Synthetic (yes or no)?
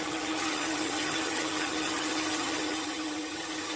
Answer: yes